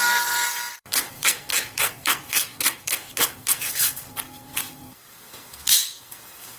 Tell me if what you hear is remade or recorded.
remade